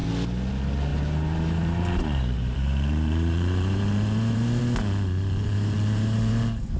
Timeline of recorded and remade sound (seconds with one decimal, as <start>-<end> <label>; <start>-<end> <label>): 0.0-0.9 recorded; 0.9-4.6 remade; 4.6-5.4 recorded; 5.4-6.3 remade; 6.3-6.8 recorded